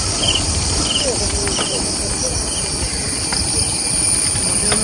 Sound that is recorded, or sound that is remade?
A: recorded